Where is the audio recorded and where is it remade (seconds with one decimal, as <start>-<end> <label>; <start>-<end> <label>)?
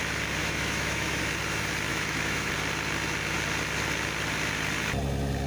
0.0-0.4 recorded; 0.4-1.2 remade; 1.2-1.9 recorded; 1.9-2.5 remade; 2.5-5.5 recorded